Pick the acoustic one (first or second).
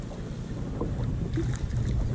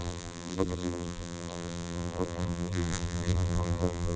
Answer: first